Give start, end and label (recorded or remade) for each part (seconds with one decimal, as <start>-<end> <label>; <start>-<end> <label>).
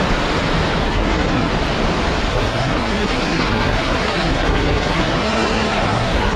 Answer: 0.0-0.8 recorded; 0.8-1.5 remade; 1.5-2.3 recorded; 2.3-6.4 remade